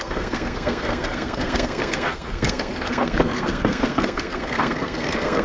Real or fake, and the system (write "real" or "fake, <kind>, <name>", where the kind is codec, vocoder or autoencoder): fake, codec, SNAC